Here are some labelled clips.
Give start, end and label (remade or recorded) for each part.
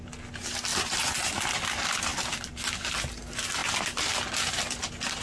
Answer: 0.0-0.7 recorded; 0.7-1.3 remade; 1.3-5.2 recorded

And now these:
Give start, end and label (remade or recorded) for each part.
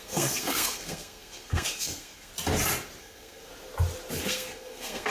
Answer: 0.0-2.3 remade; 2.3-3.0 recorded; 3.0-3.5 remade; 3.5-4.2 recorded; 4.2-5.1 remade